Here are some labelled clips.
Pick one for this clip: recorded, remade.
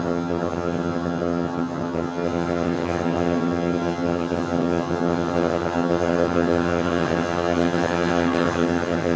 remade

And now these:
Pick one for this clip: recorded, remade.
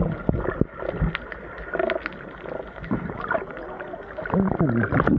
recorded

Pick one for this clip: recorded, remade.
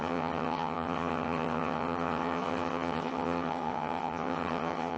remade